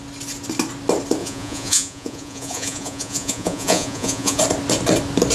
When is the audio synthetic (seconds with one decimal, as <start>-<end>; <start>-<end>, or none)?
1.2-4.4